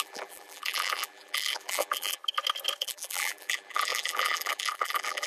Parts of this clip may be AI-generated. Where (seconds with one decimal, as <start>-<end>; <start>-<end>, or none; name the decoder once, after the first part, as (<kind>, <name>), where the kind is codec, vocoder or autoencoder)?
0.0-2.2 (vocoder, BigVGAN v2); 2.8-5.3